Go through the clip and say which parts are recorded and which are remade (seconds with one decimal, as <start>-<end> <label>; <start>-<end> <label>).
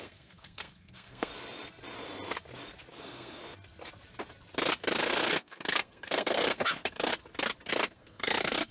0.0-1.3 remade; 1.3-2.9 recorded; 2.9-3.4 remade; 3.4-5.0 recorded; 5.0-7.1 remade; 7.1-7.7 recorded; 7.7-8.7 remade